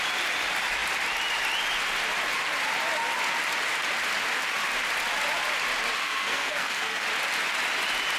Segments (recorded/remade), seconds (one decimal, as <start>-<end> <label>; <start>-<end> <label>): 0.0-6.0 recorded; 6.0-7.0 remade; 7.0-8.2 recorded